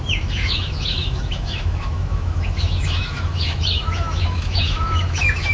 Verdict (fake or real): fake